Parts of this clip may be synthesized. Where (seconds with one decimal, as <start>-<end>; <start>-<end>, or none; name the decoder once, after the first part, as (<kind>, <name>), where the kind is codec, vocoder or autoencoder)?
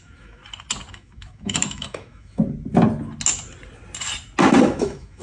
0.0-0.4 (autoencoder, DAC-VAE); 0.9-2.4; 4.6-5.2